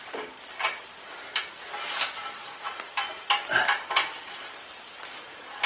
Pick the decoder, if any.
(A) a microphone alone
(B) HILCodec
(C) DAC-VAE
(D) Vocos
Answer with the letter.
A